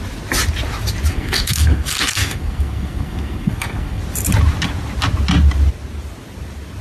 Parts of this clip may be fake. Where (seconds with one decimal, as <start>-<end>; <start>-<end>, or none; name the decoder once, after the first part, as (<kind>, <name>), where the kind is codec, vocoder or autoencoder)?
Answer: 1.1-4.0 (codec, SNAC)